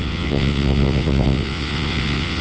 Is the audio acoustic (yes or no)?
no